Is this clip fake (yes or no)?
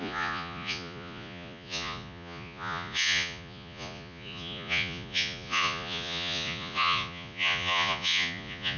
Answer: yes